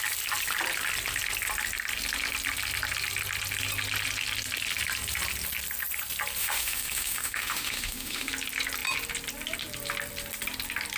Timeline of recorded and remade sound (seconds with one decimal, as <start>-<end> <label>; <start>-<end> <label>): 0.0-6.4 recorded; 6.4-8.3 remade; 8.3-11.0 recorded